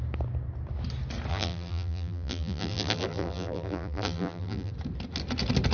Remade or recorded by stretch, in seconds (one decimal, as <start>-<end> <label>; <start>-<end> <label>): 0.0-1.3 recorded; 1.3-4.7 remade; 4.7-5.7 recorded